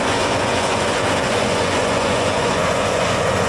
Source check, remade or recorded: remade